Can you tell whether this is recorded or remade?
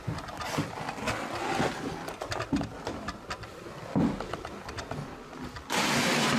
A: recorded